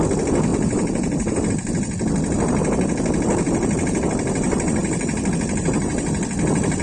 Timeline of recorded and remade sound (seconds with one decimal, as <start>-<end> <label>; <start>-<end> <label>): 0.0-0.5 recorded; 0.5-1.5 remade; 1.5-6.8 recorded

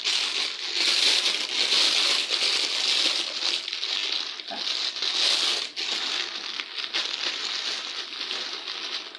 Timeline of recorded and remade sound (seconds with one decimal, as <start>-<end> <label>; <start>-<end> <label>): 0.0-9.2 recorded

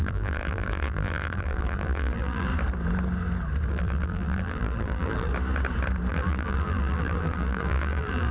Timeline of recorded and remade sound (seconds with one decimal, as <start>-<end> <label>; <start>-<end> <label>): 0.0-2.5 remade; 2.5-3.7 recorded; 3.7-5.3 remade; 5.3-6.1 recorded; 6.1-8.3 remade